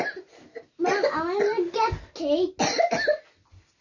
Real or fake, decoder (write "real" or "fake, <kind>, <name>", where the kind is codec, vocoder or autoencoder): real